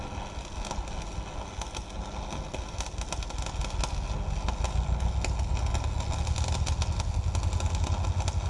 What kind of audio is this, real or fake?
real